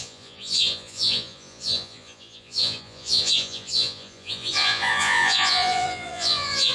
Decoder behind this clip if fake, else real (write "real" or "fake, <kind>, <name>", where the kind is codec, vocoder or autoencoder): fake, vocoder, Vocos